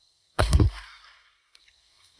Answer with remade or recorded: remade